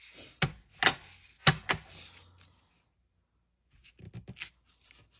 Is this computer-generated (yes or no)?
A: no